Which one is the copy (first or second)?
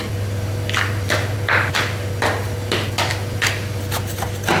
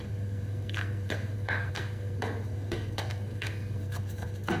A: second